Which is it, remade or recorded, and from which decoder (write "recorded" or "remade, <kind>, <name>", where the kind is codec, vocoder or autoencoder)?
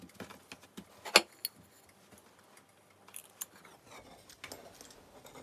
recorded